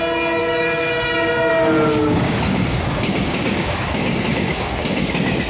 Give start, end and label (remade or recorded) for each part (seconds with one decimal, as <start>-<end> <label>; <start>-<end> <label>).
0.0-0.4 recorded; 0.4-1.5 remade; 1.5-2.0 recorded; 2.0-5.1 remade; 5.1-5.5 recorded